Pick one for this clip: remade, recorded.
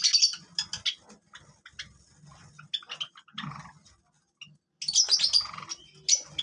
recorded